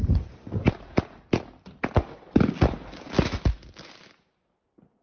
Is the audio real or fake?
real